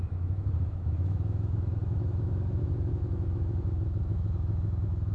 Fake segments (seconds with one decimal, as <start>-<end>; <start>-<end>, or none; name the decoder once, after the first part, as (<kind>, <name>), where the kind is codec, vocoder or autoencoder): 0.0-5.1 (autoencoder, DAC-VAE)